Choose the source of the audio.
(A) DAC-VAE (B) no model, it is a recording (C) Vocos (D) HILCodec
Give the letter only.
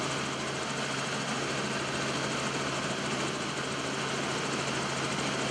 B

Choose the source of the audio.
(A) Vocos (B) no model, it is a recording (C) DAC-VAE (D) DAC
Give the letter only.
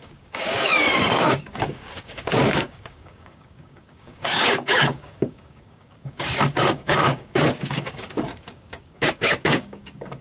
D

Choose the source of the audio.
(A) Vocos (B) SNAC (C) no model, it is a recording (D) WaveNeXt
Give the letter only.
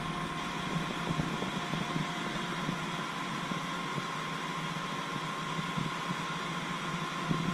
C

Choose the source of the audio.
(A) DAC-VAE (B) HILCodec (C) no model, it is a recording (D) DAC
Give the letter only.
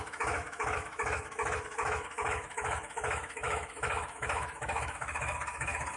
A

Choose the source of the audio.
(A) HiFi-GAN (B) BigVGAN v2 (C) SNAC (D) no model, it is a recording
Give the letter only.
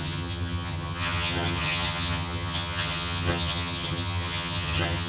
A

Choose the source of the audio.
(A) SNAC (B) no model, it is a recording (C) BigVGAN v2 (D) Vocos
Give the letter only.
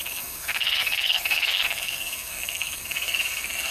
A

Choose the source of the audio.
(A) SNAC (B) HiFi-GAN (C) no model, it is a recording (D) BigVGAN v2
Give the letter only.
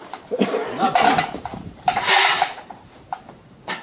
D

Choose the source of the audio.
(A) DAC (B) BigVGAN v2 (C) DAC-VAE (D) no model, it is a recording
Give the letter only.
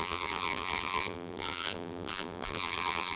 B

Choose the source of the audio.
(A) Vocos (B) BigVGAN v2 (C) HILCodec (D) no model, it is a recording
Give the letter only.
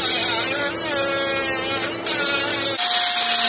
D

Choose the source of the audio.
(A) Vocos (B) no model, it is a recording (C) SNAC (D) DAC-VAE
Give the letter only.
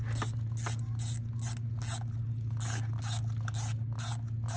B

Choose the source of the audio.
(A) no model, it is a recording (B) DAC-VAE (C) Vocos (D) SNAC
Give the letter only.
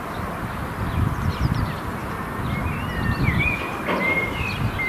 A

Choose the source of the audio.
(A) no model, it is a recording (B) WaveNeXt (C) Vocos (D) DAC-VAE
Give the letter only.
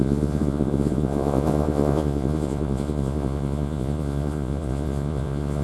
C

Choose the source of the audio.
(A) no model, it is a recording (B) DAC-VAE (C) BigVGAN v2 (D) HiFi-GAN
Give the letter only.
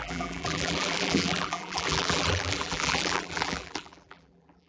C